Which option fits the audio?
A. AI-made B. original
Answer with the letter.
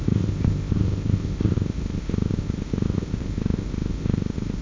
A